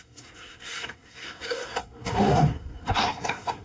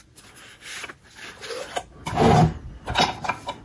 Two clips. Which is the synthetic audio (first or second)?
first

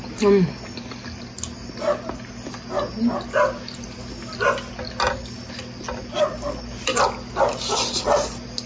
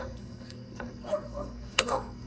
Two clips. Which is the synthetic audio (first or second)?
second